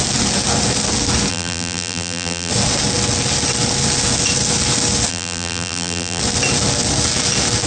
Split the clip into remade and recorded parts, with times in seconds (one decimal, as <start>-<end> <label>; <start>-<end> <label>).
0.0-1.3 recorded; 1.3-2.5 remade; 2.5-5.1 recorded; 5.1-6.2 remade; 6.2-7.7 recorded